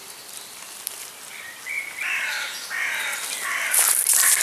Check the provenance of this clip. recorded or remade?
recorded